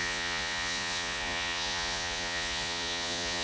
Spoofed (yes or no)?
yes